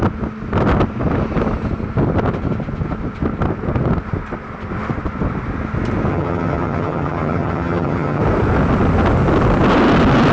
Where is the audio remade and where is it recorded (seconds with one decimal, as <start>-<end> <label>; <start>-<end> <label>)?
0.0-6.1 recorded; 6.1-8.2 remade; 8.2-10.3 recorded